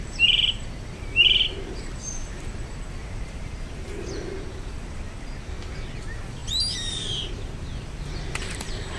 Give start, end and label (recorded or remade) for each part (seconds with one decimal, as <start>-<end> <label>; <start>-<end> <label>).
0.0-9.0 recorded